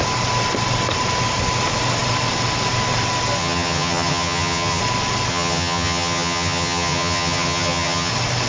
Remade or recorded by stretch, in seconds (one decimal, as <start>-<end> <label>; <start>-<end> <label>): 0.0-3.4 recorded; 3.4-4.8 remade; 4.8-5.3 recorded; 5.3-8.1 remade; 8.1-8.5 recorded